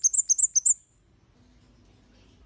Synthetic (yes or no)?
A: no